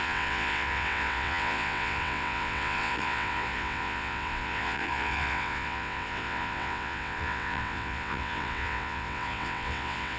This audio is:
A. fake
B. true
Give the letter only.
A